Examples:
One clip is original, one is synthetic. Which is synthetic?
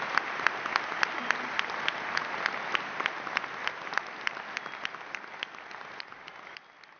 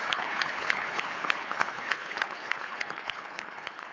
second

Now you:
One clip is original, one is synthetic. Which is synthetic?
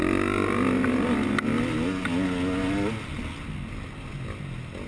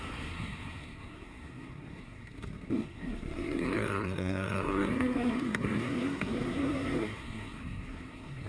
second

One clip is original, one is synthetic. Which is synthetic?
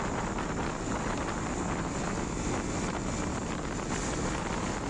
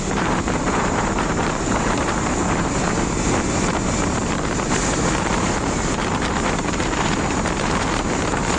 second